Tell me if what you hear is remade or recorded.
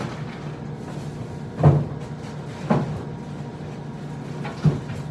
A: recorded